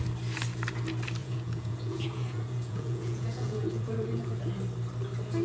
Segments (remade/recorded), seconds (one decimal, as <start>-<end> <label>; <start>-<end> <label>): 0.0-1.2 recorded; 1.2-4.4 remade; 4.4-5.4 recorded